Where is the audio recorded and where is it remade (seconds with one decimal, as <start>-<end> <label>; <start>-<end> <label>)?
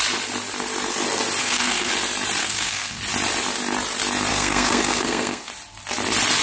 0.0-1.4 recorded; 1.4-1.9 remade; 1.9-2.4 recorded; 2.4-3.0 remade; 3.0-4.3 recorded; 4.3-5.5 remade; 5.5-6.4 recorded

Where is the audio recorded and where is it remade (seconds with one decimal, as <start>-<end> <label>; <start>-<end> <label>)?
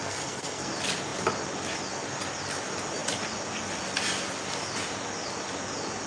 0.0-0.7 remade; 0.7-6.1 recorded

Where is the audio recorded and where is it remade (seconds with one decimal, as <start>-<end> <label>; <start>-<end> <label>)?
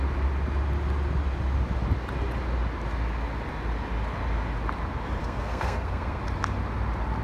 0.0-5.2 recorded; 5.2-6.2 remade; 6.2-7.2 recorded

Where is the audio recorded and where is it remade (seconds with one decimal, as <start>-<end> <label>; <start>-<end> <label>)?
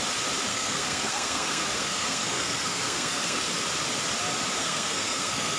0.0-0.5 recorded; 0.5-3.5 remade; 3.5-4.6 recorded; 4.6-5.6 remade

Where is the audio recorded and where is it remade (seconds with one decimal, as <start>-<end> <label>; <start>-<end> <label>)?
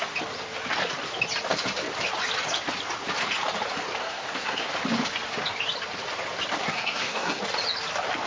0.0-4.0 recorded; 4.0-4.7 remade; 4.7-6.6 recorded; 6.6-7.4 remade; 7.4-8.3 recorded